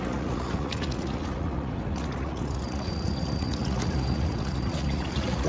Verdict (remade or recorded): remade